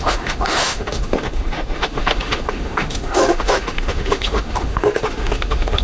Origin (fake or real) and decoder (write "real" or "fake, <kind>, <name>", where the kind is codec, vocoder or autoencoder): fake, autoencoder, DAC-VAE